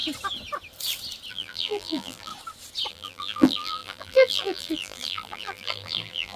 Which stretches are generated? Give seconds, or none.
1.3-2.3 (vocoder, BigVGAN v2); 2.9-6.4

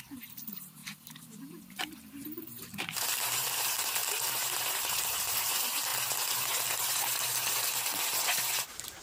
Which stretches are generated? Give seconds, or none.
0.0-0.8 (vocoder, BigVGAN v2); 1.7-4.0; 4.6-5.9; 7.8-9.0

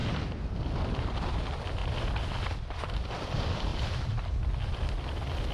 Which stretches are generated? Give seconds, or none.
1.0-1.8 (vocoder, BigVGAN v2); 2.6-3.7

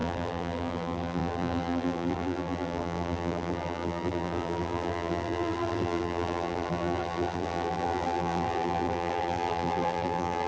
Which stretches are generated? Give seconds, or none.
0.0-10.5 (vocoder, BigVGAN v2)

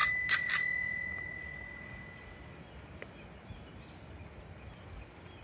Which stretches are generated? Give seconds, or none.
none

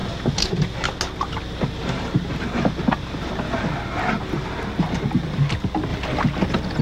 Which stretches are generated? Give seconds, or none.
none

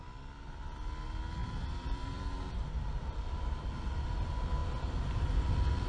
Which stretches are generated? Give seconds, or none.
1.4-4.0 (vocoder, BigVGAN v2)

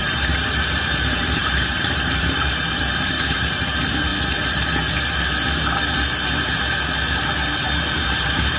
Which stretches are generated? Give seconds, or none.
0.0-4.1 (vocoder, BigVGAN v2); 7.9-8.6